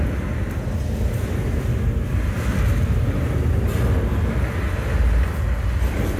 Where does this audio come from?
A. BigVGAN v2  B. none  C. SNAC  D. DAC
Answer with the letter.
B